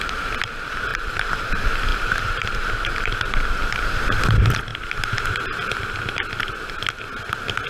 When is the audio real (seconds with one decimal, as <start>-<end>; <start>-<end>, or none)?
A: 0.0-0.9; 1.5-1.9; 4.0-7.7